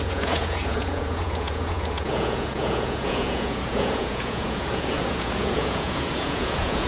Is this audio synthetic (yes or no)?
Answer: yes